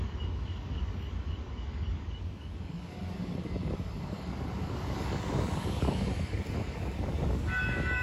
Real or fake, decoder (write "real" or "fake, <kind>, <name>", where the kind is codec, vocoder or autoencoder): fake, codec, DAC